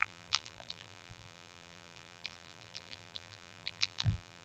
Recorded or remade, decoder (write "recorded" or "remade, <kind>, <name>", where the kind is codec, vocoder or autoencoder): remade, vocoder, BigVGAN v2